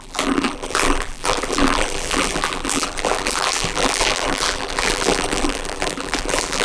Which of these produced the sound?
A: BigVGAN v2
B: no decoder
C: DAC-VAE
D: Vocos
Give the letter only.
A